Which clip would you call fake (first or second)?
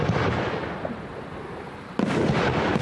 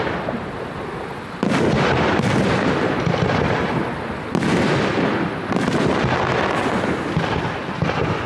first